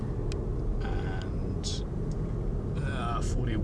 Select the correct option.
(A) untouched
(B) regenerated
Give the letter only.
A